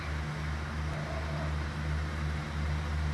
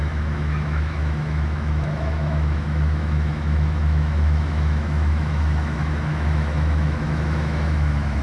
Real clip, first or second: first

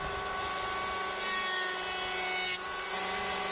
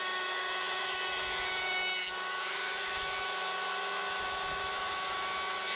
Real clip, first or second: first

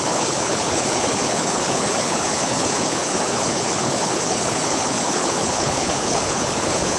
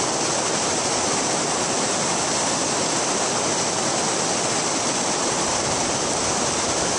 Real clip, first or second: second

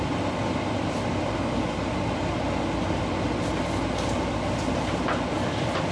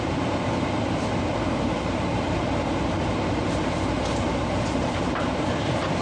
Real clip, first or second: first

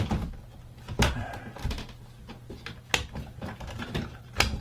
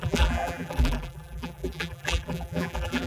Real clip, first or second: first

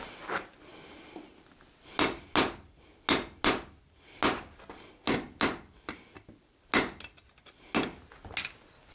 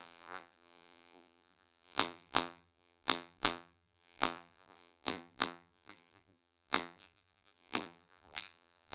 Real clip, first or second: first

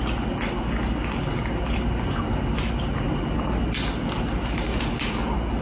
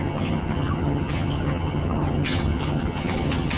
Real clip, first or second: first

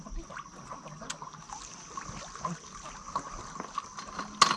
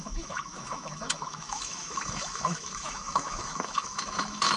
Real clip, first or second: first